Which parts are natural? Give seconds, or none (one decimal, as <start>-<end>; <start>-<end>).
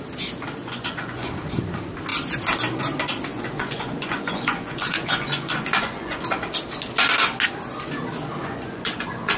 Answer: 0.0-0.6; 1.3-3.3; 6.2-8.4